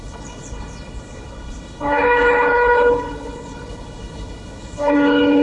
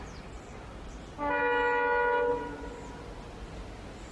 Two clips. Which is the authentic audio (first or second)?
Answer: second